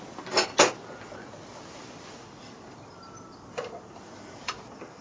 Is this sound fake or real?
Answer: real